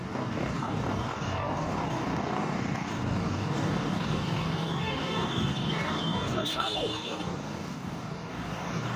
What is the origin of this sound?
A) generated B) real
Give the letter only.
A